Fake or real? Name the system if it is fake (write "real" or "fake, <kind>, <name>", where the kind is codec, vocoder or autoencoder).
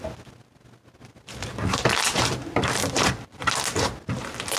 real